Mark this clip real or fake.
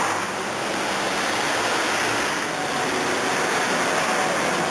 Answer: real